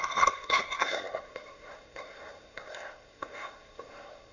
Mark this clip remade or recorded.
remade